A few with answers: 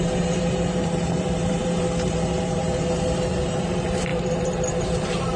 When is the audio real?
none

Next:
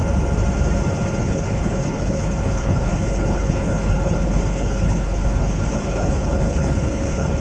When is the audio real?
0.0-1.2

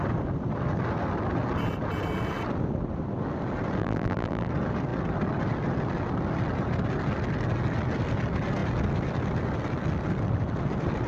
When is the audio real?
0.0-3.8; 4.5-11.1

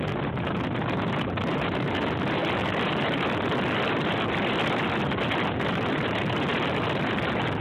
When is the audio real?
0.0-2.4; 4.9-7.6

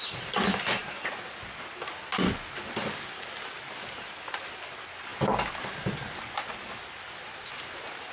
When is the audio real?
0.0-8.1

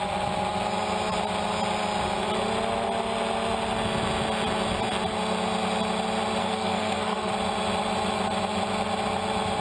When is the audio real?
0.0-6.4; 7.3-9.6

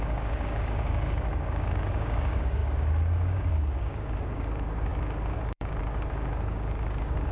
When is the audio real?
none